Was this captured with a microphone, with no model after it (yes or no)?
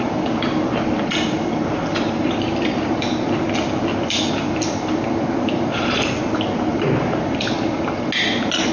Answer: yes